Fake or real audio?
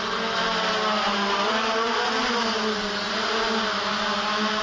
real